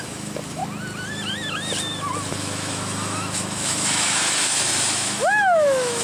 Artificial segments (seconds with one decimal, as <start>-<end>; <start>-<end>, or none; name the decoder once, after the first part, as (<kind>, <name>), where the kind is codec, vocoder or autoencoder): 0.0-0.6 (autoencoder, DAC-VAE); 2.3-6.0